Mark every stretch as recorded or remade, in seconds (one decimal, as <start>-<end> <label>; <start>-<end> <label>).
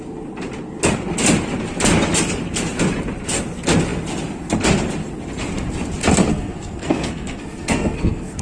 0.0-6.3 recorded; 6.3-8.4 remade